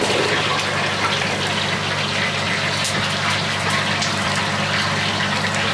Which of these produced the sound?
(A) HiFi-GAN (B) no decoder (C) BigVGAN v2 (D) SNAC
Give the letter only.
B